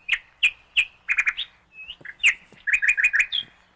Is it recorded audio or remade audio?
recorded